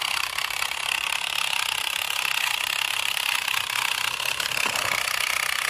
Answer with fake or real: fake